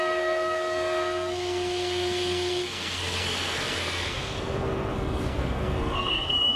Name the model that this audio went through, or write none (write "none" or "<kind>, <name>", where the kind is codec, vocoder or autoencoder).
codec, SNAC